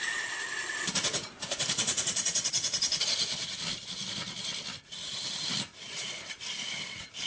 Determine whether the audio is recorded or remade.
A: recorded